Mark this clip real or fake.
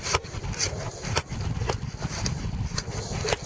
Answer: real